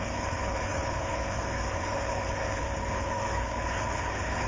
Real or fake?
fake